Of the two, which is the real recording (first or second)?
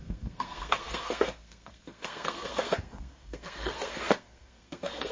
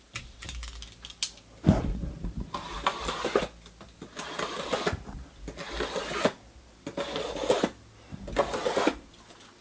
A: second